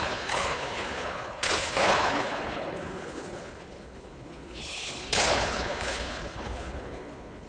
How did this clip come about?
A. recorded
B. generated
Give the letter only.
B